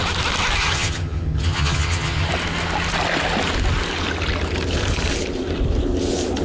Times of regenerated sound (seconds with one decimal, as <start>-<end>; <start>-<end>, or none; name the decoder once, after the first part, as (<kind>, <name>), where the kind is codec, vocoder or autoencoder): 0.6-2.3 (vocoder, HiFi-GAN)